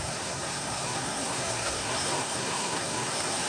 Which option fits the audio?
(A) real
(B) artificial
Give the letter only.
B